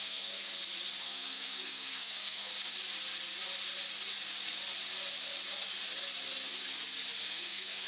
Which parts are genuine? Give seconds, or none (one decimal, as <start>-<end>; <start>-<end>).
0.5-1.0; 2.5-7.2